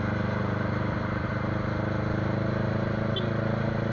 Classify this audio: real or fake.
real